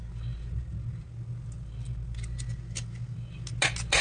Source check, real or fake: real